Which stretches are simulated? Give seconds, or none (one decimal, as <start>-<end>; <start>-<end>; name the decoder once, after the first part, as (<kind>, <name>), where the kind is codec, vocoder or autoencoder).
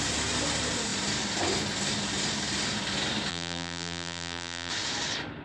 3.3-4.7 (vocoder, BigVGAN v2)